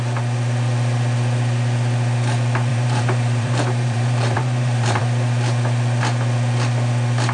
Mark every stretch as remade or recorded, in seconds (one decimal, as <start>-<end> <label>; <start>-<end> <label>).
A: 0.0-2.7 recorded; 2.7-5.0 remade; 5.0-7.3 recorded